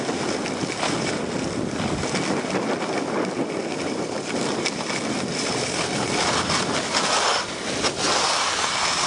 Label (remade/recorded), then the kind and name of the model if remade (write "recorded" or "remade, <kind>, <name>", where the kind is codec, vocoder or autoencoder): recorded